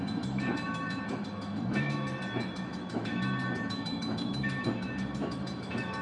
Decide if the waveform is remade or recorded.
remade